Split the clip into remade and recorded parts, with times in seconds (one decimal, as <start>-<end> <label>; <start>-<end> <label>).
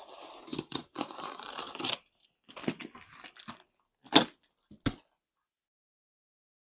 0.0-0.5 recorded; 0.5-1.5 remade; 1.5-6.7 recorded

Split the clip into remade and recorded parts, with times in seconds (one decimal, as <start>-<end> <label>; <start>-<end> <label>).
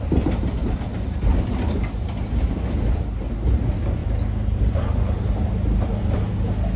0.0-6.8 recorded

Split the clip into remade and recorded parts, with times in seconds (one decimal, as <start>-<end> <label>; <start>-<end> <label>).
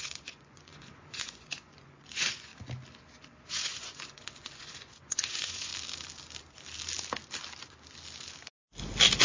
0.0-2.5 remade; 2.5-3.5 recorded; 3.5-5.7 remade; 5.7-9.2 recorded